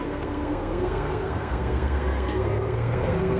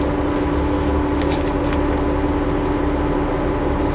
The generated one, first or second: first